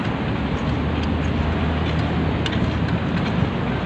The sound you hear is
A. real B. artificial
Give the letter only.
A